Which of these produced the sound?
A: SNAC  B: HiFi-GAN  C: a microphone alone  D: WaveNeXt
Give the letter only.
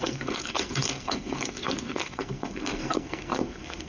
A